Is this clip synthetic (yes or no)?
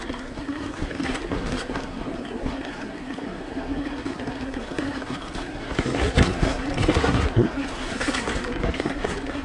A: yes